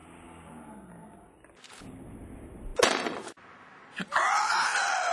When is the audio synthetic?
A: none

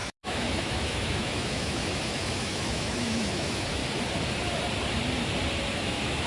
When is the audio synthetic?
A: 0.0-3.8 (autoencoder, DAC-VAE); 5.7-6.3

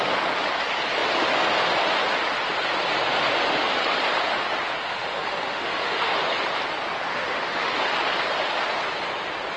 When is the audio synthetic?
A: 4.8-6.2 (autoencoder, DAC-VAE); 7.1-7.7

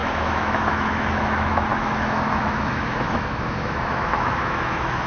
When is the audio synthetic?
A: 0.0-5.1 (autoencoder, DAC-VAE)

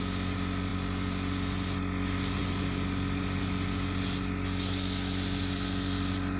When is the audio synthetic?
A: none

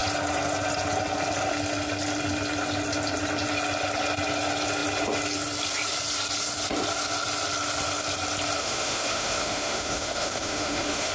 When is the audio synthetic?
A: 8.6-11.1 (autoencoder, DAC-VAE)